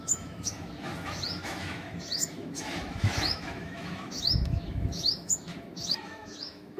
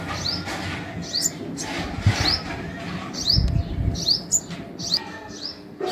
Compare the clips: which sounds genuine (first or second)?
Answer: second